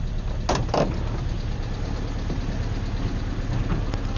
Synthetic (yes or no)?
no